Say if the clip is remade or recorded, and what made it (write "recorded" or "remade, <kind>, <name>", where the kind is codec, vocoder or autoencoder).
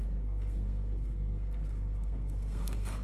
remade, codec, SNAC